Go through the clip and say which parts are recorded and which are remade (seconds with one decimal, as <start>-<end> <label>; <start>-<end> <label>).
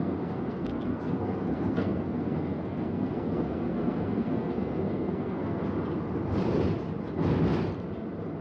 0.0-5.6 remade; 5.6-8.4 recorded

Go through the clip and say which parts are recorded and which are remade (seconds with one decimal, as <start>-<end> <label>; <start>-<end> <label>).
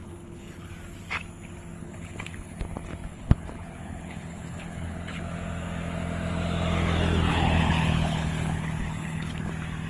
0.0-0.7 remade; 0.7-1.8 recorded; 1.8-2.6 remade; 2.6-3.1 recorded; 3.1-5.2 remade; 5.2-7.3 recorded; 7.3-9.5 remade; 9.5-9.9 recorded